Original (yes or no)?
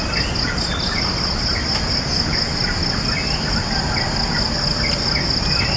yes